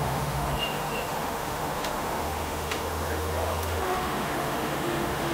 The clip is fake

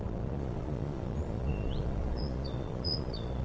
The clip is fake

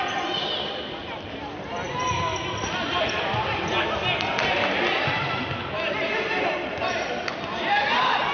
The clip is real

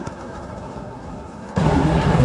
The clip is fake